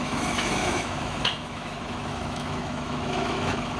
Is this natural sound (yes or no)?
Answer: no